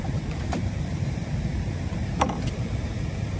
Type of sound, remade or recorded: remade